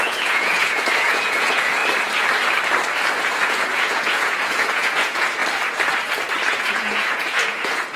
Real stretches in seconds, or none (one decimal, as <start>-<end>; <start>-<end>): 1.8-3.2; 5.4-6.5